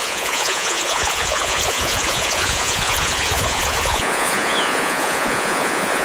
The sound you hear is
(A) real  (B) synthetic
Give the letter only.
B